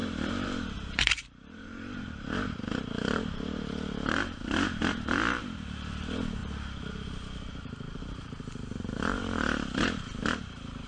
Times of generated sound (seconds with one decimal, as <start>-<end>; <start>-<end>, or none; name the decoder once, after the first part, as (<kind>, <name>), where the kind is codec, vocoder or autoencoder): 0.0-6.4 (vocoder, BigVGAN v2); 8.1-10.9